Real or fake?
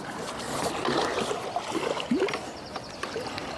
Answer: real